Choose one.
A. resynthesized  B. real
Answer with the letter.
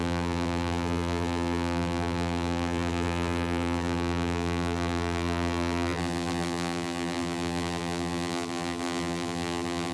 A